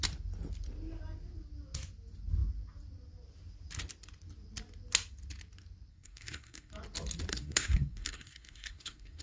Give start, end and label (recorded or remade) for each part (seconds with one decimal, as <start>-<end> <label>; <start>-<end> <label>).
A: 0.0-5.9 recorded; 5.9-6.7 remade; 6.7-7.3 recorded; 7.3-9.2 remade